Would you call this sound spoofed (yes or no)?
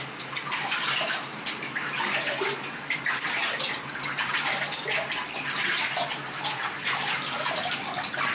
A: no